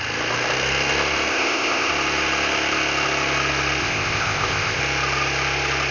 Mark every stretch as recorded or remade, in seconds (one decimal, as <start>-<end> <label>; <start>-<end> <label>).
0.0-1.3 recorded; 1.3-1.9 remade; 1.9-3.8 recorded; 3.8-4.8 remade; 4.8-5.9 recorded